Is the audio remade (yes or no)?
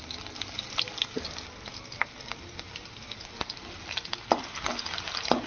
no